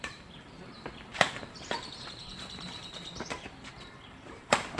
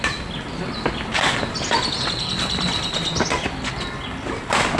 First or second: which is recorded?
second